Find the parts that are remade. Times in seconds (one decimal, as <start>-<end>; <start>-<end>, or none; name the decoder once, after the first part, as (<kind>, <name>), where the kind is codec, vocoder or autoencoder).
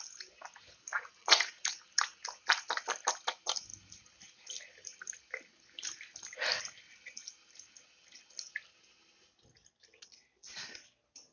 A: 0.9-1.5 (vocoder, Vocos)